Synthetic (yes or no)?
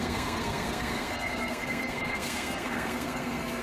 yes